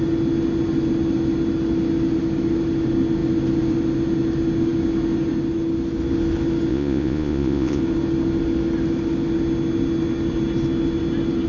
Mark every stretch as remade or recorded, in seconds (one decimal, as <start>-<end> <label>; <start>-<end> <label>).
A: 0.0-6.7 recorded; 6.7-7.8 remade; 7.8-11.5 recorded